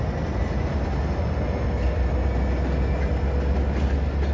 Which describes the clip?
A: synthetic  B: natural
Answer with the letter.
B